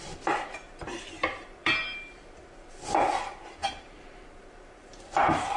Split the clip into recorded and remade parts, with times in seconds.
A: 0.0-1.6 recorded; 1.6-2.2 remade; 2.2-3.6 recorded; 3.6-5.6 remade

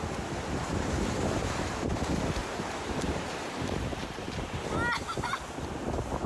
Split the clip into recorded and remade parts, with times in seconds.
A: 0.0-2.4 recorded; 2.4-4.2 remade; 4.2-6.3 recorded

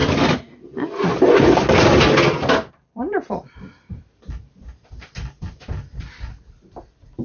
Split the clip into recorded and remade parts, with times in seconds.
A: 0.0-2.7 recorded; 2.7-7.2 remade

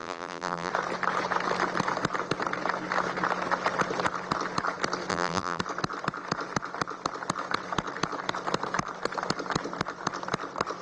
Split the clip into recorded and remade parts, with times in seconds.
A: 0.0-0.7 remade; 0.7-5.1 recorded; 5.1-5.6 remade; 5.6-10.8 recorded

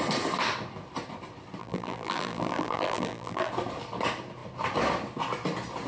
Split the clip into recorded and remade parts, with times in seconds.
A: 0.0-1.6 recorded; 1.6-3.5 remade; 3.5-5.9 recorded

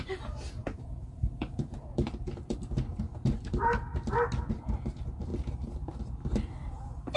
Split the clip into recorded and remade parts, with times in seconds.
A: 0.0-3.9 remade; 3.9-4.5 recorded; 4.5-7.2 remade

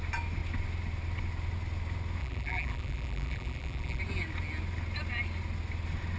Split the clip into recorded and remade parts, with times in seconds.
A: 0.0-2.2 recorded; 2.2-4.0 remade; 4.0-6.2 recorded